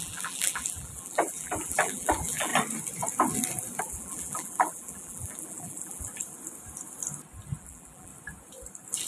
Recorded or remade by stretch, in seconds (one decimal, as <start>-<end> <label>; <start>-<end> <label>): 0.0-2.5 remade; 2.5-3.8 recorded; 3.8-6.2 remade; 6.2-7.6 recorded; 7.6-8.1 remade; 8.1-9.1 recorded